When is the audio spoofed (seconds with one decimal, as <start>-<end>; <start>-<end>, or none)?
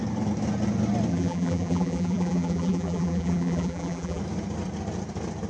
1.1-4.2